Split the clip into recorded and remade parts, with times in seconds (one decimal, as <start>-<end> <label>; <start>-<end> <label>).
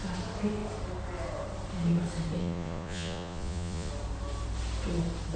0.0-2.4 recorded; 2.4-3.9 remade; 3.9-5.4 recorded